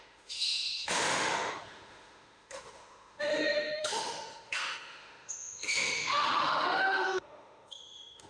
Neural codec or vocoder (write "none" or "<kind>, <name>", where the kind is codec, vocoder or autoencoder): autoencoder, DAC-VAE